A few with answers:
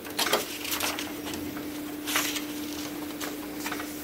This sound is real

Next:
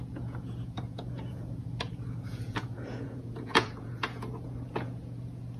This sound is fake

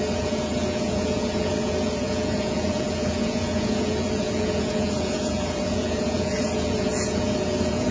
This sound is fake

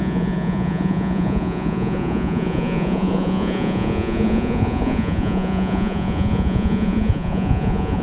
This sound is fake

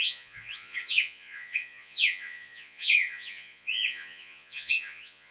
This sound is fake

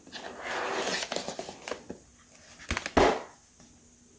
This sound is real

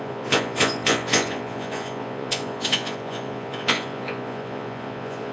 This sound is fake